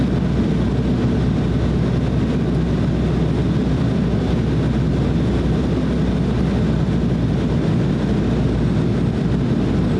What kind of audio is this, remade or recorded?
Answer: recorded